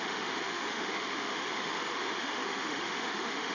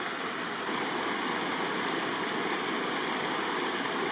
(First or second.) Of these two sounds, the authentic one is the second